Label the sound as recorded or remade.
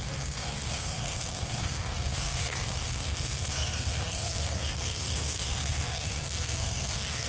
remade